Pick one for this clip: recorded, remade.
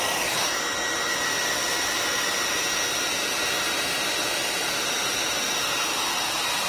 recorded